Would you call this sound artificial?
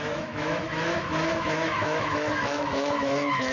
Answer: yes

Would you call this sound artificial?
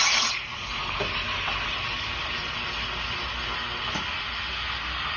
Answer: no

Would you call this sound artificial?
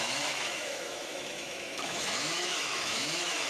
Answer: yes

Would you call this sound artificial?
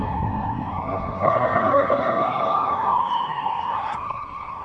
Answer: yes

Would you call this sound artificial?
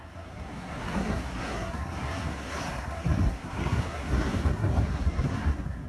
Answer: yes